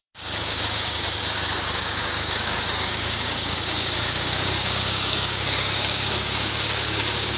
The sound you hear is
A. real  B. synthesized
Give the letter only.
B